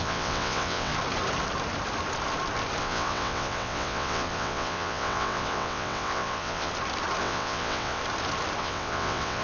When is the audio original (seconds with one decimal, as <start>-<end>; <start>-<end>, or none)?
0.9-2.8; 6.7-7.2; 8.0-8.6